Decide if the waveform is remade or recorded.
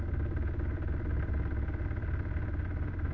recorded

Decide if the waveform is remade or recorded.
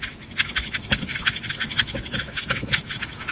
remade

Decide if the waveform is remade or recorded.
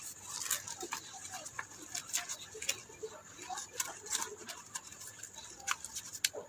recorded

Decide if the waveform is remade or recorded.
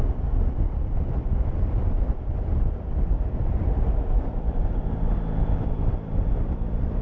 remade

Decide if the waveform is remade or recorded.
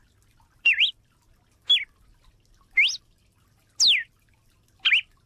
recorded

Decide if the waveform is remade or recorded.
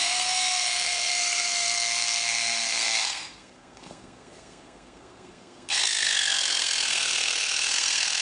remade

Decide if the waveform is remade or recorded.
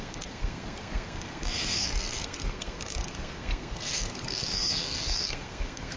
remade